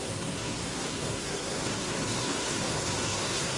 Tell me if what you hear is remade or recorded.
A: remade